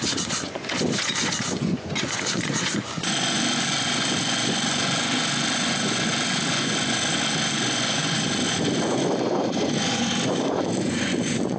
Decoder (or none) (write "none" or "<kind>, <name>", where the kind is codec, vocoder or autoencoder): vocoder, Vocos